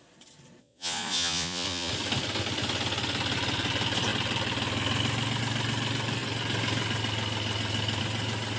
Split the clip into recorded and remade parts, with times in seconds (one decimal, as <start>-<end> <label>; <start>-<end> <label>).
0.0-0.6 recorded; 0.6-1.9 remade; 1.9-8.6 recorded